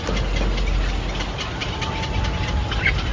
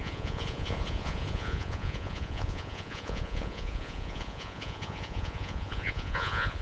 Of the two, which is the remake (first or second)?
second